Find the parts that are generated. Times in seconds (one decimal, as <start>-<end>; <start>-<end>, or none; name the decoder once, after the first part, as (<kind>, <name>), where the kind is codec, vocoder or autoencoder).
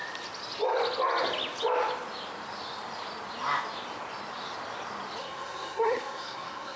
5.2-6.8 (codec, SNAC)